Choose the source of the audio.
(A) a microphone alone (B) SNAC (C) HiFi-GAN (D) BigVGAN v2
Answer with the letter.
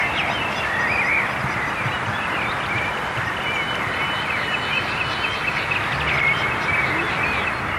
A